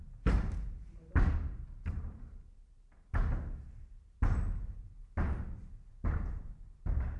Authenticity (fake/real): real